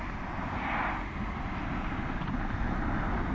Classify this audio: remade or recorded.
recorded